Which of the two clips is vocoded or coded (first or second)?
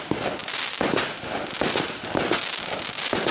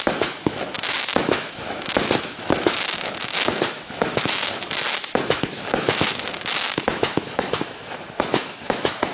second